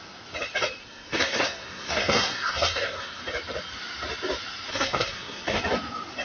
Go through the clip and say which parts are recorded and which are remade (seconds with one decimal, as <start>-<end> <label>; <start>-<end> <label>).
0.0-0.8 recorded; 0.8-3.2 remade; 3.2-4.7 recorded; 4.7-5.6 remade; 5.6-6.2 recorded